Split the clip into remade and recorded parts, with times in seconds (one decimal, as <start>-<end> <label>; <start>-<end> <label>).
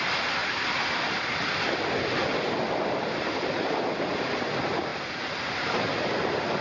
0.0-6.6 recorded